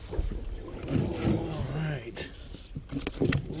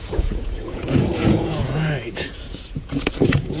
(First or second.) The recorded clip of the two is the first